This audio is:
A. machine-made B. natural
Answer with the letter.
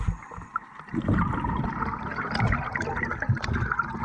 B